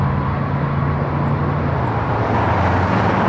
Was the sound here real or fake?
real